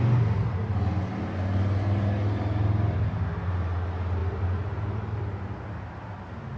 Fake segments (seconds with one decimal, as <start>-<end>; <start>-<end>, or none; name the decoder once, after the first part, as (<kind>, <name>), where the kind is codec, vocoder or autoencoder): 4.2-5.4 (vocoder, BigVGAN v2)